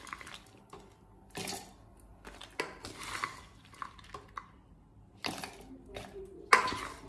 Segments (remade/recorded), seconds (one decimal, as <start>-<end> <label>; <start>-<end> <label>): 0.0-7.1 recorded